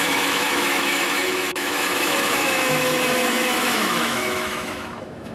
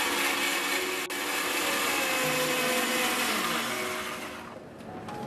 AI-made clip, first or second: first